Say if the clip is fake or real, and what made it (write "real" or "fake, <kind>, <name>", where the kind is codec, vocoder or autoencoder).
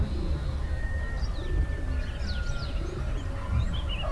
real